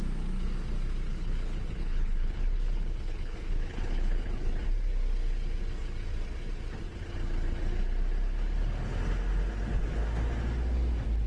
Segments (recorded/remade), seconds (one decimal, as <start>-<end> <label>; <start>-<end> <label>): 0.0-1.1 recorded; 1.1-4.3 remade; 4.3-11.3 recorded